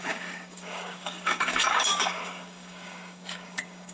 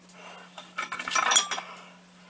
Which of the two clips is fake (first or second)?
first